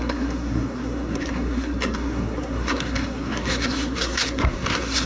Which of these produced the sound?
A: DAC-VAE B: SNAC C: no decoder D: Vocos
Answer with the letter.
B